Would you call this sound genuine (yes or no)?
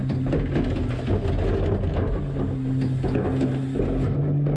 yes